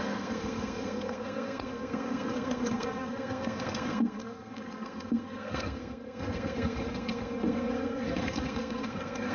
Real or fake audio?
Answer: fake